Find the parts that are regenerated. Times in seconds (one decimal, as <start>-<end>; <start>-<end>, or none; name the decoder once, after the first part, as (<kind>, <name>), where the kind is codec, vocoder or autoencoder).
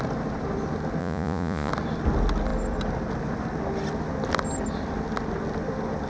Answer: 1.0-1.7 (vocoder, Vocos)